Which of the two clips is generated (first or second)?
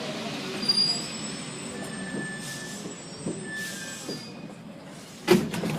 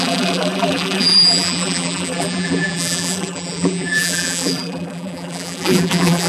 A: second